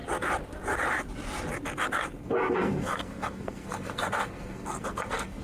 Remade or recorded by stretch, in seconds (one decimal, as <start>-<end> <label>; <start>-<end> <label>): 0.0-2.0 recorded; 2.0-5.4 remade